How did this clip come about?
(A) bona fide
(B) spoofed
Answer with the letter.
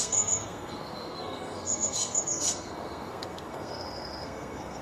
B